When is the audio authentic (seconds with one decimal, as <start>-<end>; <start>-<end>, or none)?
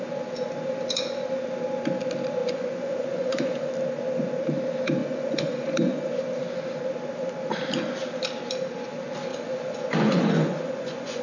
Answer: 0.0-2.4; 3.7-5.0; 6.2-9.3